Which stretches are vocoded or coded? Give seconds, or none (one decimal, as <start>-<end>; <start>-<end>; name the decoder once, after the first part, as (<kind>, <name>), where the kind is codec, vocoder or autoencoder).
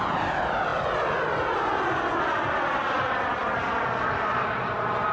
none